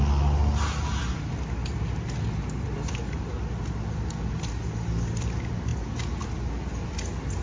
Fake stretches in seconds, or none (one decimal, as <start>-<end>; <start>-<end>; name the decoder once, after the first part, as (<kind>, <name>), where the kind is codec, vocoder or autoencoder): none